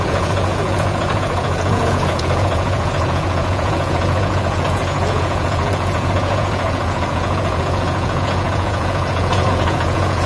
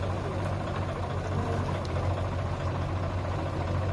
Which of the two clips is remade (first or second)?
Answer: first